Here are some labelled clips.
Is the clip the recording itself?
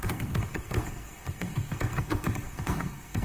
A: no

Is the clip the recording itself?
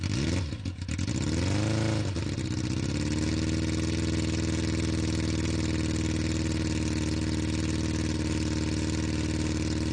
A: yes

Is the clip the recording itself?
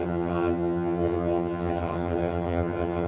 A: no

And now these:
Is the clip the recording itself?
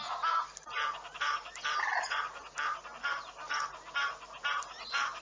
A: yes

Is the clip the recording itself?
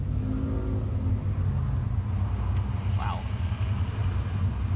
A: yes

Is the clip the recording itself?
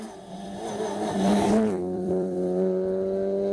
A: no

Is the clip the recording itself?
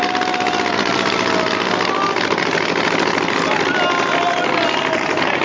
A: yes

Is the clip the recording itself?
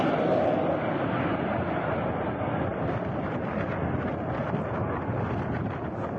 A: yes